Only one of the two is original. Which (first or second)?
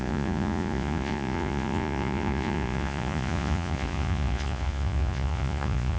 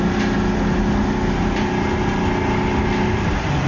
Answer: second